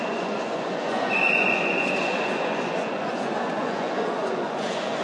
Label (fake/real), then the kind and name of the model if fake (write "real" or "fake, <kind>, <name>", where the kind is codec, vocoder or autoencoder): fake, vocoder, Vocos